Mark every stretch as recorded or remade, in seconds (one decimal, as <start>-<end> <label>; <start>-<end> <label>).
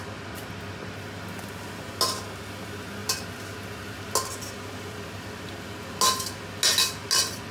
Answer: 0.0-7.5 recorded